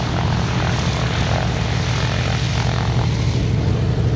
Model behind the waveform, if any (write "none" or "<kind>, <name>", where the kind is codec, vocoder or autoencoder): none